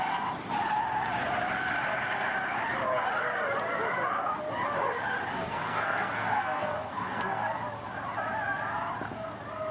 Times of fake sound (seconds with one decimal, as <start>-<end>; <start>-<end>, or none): 5.3-7.6